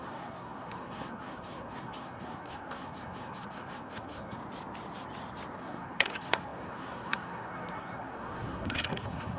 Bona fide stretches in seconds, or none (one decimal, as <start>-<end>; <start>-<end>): 4.4-5.6